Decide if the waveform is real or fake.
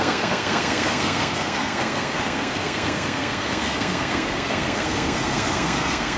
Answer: fake